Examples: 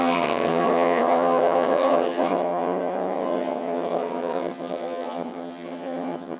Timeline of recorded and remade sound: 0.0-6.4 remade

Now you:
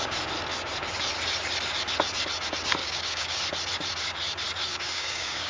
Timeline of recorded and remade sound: 0.0-2.8 recorded; 2.8-3.4 remade; 3.4-4.7 recorded; 4.7-5.5 remade

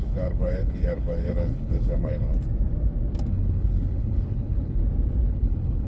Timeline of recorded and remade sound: 0.0-2.3 remade; 2.3-3.3 recorded; 3.3-4.8 remade; 4.8-5.3 recorded; 5.3-5.9 remade

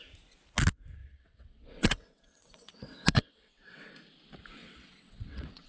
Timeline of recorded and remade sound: 0.0-1.0 recorded; 1.0-3.9 remade; 3.9-4.6 recorded; 4.6-5.7 remade

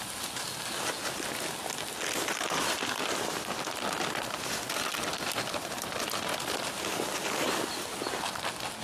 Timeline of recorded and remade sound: 0.0-8.8 recorded

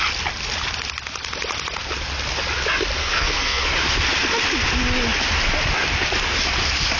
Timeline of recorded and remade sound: 0.0-3.0 recorded; 3.0-3.7 remade; 3.7-7.0 recorded